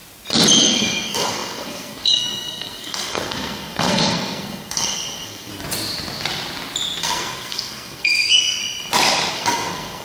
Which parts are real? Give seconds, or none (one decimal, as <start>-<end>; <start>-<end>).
0.0-0.6; 5.5-7.0; 8.6-9.3